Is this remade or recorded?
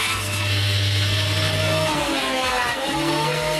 remade